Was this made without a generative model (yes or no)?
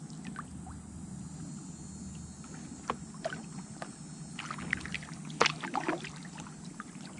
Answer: yes